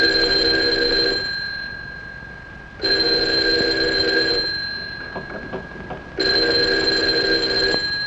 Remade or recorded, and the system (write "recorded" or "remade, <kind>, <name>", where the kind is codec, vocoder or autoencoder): recorded